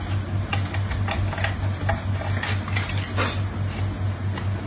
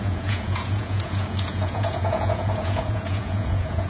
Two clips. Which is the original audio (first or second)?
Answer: first